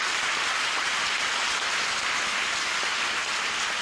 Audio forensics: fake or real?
real